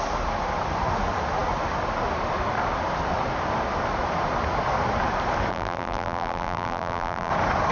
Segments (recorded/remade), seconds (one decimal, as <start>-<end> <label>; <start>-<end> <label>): 0.0-5.5 recorded; 5.5-7.3 remade; 7.3-7.7 recorded